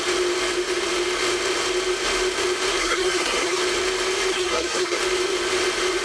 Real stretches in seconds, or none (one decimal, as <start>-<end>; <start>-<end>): 0.0-2.8; 3.6-4.3; 5.0-6.0